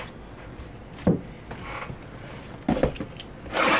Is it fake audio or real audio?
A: real